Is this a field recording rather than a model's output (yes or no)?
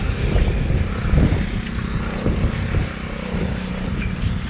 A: yes